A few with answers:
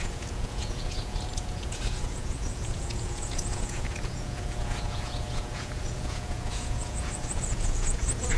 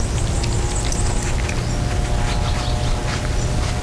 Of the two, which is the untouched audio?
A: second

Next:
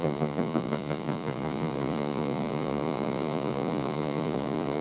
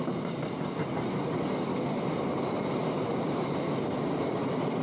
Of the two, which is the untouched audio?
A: second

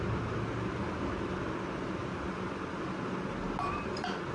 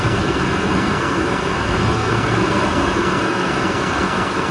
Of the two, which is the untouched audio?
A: first